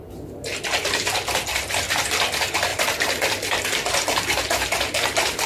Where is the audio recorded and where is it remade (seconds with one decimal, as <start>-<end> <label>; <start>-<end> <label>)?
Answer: 0.0-5.5 recorded